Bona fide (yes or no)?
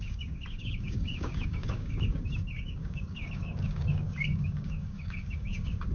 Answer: no